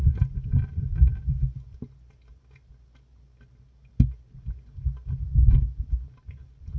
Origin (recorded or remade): recorded